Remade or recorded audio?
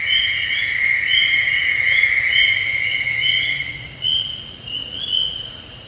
remade